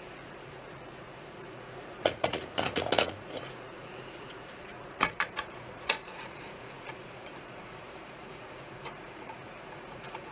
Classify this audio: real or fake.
fake